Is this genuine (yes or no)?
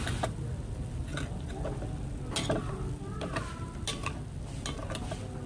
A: yes